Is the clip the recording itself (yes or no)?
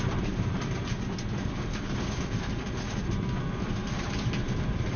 no